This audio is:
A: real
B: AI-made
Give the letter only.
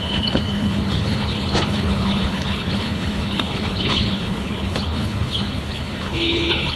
B